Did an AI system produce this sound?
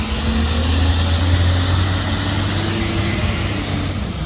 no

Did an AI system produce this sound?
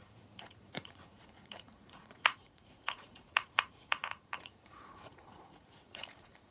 yes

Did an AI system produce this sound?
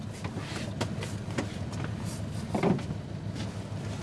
no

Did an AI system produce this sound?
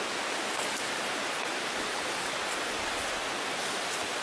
no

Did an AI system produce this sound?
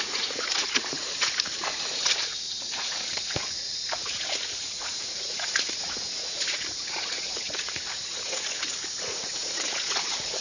yes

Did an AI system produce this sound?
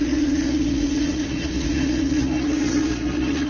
yes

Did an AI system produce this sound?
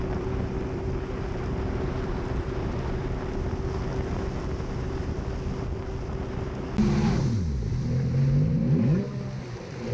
no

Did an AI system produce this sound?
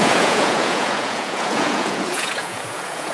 yes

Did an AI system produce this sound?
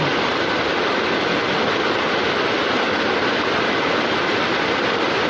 no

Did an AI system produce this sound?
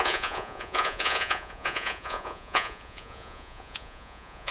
yes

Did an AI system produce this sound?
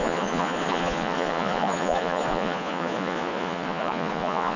yes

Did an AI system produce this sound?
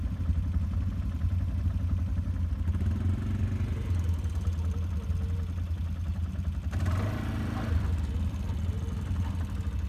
no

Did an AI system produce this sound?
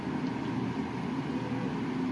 no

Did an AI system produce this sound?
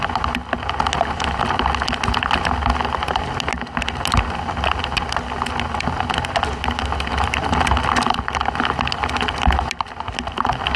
no